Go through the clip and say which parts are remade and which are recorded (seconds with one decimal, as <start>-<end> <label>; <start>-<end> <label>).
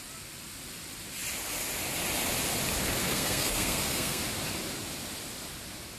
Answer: 0.0-3.0 recorded; 3.0-4.2 remade; 4.2-6.0 recorded